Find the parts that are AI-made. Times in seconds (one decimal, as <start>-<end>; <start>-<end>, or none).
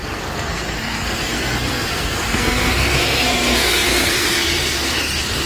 0.0-5.5